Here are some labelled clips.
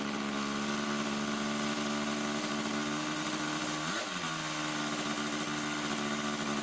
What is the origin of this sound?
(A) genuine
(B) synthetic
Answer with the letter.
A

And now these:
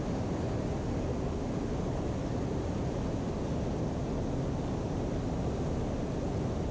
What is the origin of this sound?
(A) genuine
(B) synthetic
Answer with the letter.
A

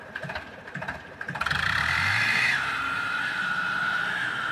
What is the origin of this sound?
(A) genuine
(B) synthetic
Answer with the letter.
B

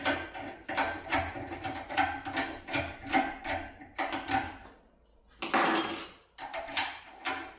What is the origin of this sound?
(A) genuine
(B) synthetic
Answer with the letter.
A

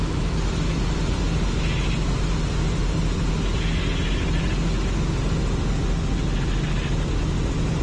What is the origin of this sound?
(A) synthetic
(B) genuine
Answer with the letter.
B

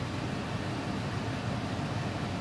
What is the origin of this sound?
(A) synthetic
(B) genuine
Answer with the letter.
B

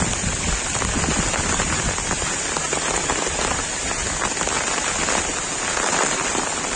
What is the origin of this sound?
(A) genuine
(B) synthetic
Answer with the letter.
A